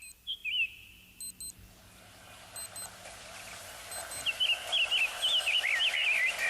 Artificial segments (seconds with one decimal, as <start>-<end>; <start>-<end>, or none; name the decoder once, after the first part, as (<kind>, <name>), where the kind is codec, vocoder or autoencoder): none